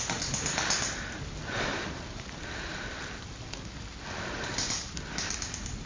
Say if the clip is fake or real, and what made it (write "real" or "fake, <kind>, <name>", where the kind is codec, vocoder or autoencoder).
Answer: real